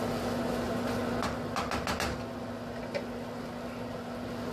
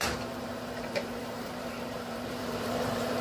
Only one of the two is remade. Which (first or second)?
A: second